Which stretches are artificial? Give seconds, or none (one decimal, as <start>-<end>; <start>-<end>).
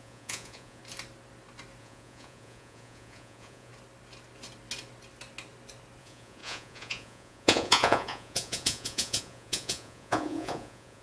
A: 0.0-0.8; 1.8-3.7; 6.0-11.0